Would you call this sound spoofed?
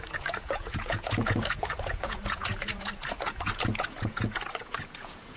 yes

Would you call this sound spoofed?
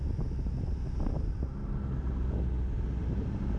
no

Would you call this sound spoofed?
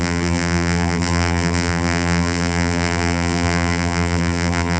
yes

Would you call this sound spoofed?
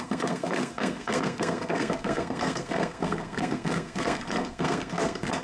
yes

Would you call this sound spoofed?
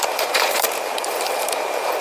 yes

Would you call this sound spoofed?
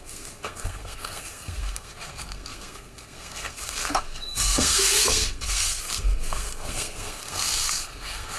yes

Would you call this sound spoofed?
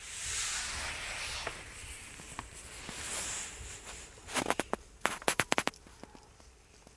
no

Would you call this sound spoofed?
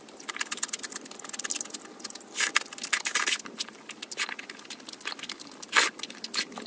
no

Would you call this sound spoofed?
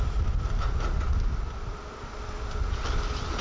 no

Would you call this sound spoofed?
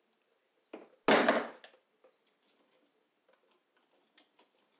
no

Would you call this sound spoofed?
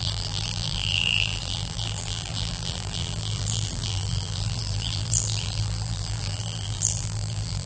yes